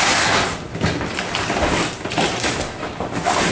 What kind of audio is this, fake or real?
real